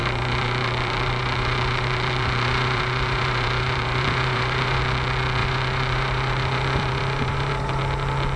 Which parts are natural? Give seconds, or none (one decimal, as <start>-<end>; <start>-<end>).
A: 4.8-5.4; 7.5-8.4